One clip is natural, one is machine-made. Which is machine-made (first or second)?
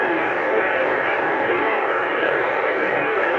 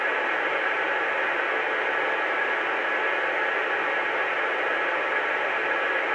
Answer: first